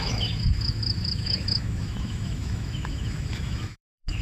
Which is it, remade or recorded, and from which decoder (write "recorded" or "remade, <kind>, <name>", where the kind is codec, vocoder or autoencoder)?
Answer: remade, autoencoder, DAC-VAE